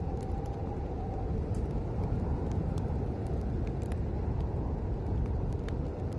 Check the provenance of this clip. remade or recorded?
recorded